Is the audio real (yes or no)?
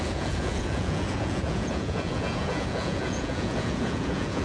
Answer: no